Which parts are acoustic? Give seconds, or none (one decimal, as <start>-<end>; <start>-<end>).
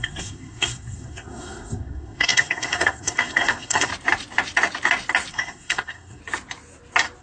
3.9-5.3; 6.2-7.2